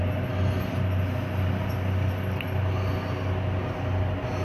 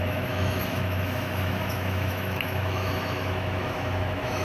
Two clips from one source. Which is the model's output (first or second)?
second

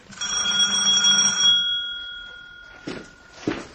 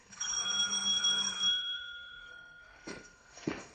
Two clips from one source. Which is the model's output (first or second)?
second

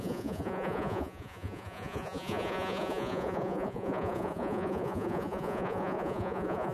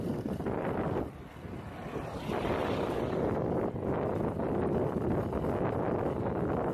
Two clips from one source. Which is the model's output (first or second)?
first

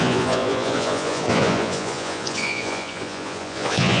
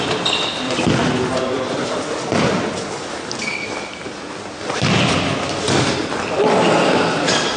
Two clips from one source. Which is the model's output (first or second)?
first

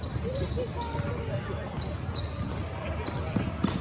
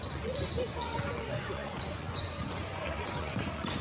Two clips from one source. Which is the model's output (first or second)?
second